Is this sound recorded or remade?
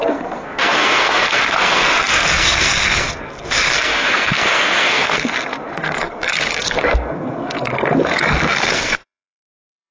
remade